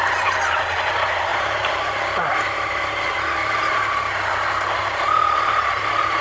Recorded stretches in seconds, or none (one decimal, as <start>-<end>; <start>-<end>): 0.0-6.2